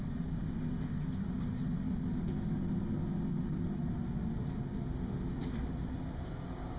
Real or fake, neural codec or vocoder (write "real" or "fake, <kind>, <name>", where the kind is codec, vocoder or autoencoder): real